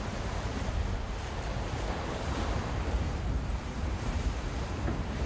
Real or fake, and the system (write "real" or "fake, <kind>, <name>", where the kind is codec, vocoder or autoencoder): fake, vocoder, BigVGAN v2